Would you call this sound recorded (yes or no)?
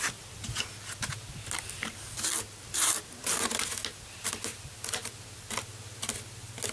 yes